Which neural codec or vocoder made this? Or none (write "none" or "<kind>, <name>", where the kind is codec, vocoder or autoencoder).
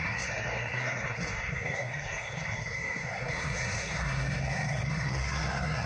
codec, SNAC